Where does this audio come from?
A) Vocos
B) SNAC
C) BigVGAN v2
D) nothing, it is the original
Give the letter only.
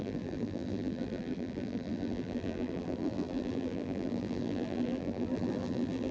C